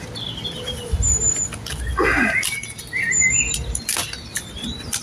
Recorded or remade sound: recorded